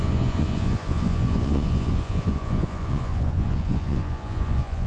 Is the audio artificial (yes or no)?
yes